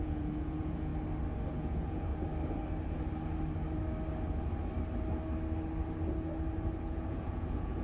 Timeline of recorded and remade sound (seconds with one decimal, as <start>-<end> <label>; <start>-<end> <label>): 0.0-0.9 remade; 0.9-1.5 recorded; 1.5-2.1 remade; 2.1-6.8 recorded; 6.8-7.8 remade